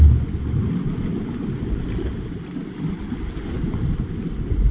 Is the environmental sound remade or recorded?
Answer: recorded